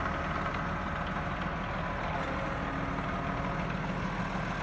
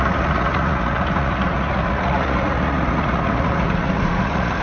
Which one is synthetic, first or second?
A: second